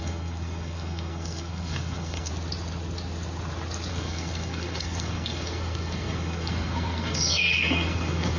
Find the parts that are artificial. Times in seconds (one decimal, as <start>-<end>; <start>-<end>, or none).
0.0-2.3; 3.9-8.4